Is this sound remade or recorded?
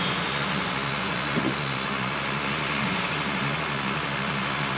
remade